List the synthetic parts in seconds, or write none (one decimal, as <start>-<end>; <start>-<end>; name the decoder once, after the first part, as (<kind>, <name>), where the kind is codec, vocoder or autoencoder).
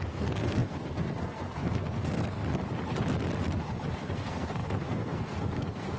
0.0-2.4 (codec, SNAC); 3.9-6.0